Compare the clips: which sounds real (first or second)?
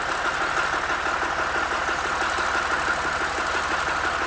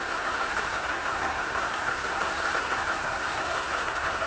first